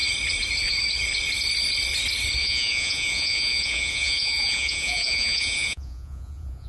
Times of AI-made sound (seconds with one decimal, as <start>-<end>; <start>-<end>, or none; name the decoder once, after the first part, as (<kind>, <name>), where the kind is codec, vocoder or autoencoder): 2.4-6.7 (vocoder, Vocos)